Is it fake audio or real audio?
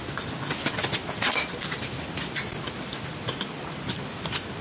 real